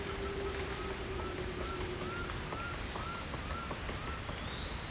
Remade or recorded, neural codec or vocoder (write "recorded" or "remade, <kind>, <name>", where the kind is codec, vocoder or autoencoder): recorded